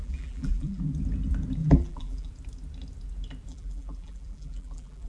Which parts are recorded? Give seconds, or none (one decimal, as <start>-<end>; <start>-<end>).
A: 0.8-1.6; 2.3-3.5